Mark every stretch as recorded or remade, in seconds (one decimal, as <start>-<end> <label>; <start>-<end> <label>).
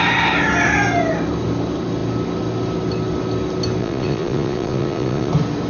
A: 0.0-3.8 recorded; 3.8-5.3 remade; 5.3-5.7 recorded